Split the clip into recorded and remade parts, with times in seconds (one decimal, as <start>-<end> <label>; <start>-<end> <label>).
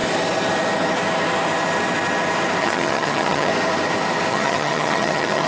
0.0-2.6 recorded; 2.6-3.5 remade; 3.5-4.3 recorded; 4.3-5.5 remade